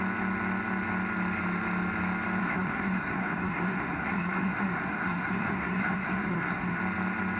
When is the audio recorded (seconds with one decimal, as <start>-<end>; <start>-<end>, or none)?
0.0-2.4; 6.8-7.4